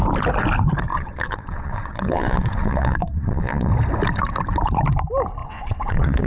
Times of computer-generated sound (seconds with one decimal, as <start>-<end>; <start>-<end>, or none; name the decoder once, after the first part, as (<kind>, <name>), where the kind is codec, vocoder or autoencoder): 0.9-3.7 (vocoder, WaveNeXt); 5.4-6.3